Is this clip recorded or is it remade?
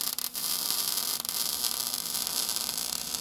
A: remade